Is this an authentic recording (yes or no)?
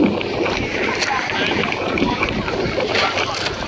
yes